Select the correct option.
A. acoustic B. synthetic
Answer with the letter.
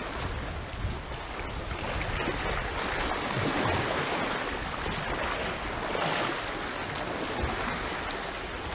A